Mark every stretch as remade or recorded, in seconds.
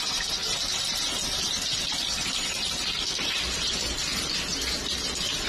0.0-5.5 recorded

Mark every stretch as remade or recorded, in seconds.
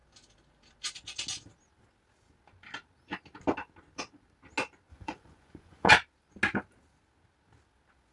0.0-4.9 recorded; 4.9-5.9 remade; 5.9-8.1 recorded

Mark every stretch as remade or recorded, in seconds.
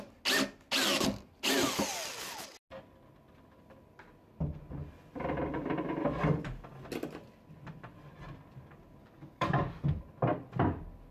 0.0-9.0 recorded; 9.0-10.0 remade; 10.0-11.1 recorded